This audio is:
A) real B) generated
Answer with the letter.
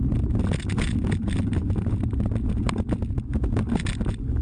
A